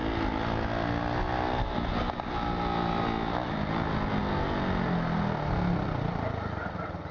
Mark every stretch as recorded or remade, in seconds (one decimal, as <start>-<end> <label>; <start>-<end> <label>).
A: 0.0-7.1 recorded